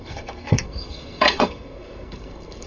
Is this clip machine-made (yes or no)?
yes